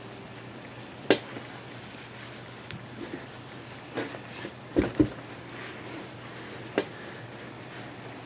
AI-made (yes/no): no